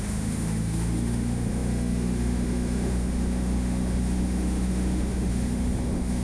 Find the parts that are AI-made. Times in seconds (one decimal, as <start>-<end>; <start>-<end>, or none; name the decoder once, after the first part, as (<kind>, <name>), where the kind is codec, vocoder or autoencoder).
0.0-6.2 (autoencoder, DAC-VAE)